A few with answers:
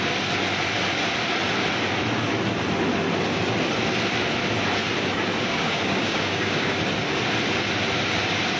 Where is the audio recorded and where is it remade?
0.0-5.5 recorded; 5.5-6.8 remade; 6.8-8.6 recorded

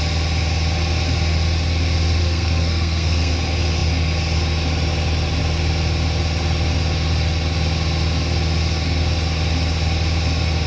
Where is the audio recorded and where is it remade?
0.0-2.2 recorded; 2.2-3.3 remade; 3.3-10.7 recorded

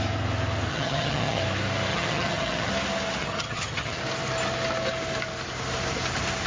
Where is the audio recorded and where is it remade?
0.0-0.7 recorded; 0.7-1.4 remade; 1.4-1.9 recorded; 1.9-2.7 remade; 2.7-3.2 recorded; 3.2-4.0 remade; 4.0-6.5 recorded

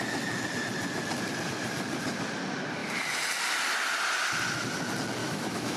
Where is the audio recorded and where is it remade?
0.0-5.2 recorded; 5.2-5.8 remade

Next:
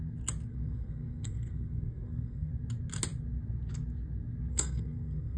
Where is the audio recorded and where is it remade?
0.0-0.5 recorded; 0.5-2.5 remade; 2.5-4.5 recorded; 4.5-5.4 remade

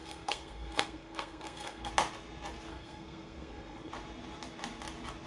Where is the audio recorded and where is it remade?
0.0-1.9 remade; 1.9-2.7 recorded; 2.7-3.9 remade; 3.9-5.3 recorded

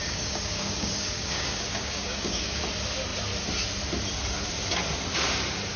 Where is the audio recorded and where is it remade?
0.0-2.6 remade; 2.6-5.8 recorded

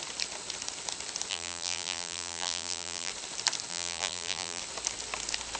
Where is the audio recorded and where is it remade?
0.0-1.3 recorded; 1.3-3.1 remade; 3.1-3.7 recorded; 3.7-4.6 remade; 4.6-5.6 recorded